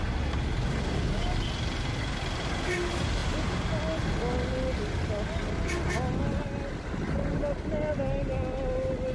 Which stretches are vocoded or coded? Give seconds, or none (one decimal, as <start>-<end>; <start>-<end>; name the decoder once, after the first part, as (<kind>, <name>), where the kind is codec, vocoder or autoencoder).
none